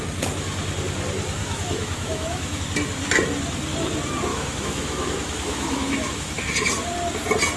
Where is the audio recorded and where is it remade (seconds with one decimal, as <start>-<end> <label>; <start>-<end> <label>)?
0.0-1.4 recorded; 1.4-2.6 remade; 2.6-4.3 recorded; 4.3-6.4 remade; 6.4-7.6 recorded